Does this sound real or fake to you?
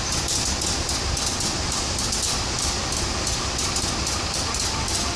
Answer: real